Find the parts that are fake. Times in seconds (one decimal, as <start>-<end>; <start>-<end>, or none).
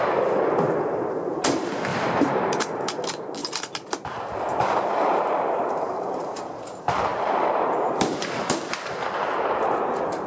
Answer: 1.9-2.5; 3.4-6.4; 7.1-9.8